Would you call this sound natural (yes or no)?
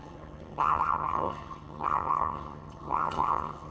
no